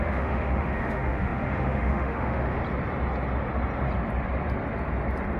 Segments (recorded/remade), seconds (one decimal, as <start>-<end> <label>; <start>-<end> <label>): 0.0-2.6 remade; 2.6-5.4 recorded